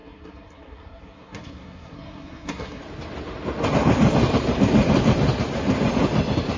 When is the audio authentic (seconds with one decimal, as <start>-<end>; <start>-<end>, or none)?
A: 2.8-6.6